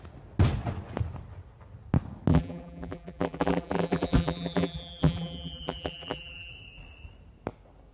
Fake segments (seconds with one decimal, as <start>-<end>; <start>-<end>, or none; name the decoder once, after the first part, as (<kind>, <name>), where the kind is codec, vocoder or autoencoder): 2.3-6.5 (vocoder, BigVGAN v2)